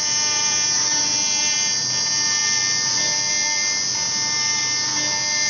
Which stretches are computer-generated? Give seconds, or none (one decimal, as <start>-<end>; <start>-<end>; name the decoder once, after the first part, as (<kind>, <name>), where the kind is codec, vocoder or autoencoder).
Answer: none